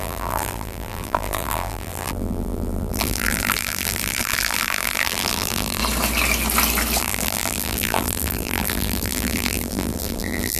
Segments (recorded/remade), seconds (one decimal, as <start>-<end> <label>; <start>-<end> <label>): 0.0-5.8 remade; 5.8-7.0 recorded; 7.0-10.6 remade